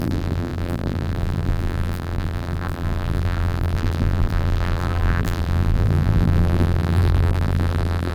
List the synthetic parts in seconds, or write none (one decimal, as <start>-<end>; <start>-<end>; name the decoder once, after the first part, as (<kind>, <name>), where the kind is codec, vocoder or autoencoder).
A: 0.0-8.1 (vocoder, BigVGAN v2)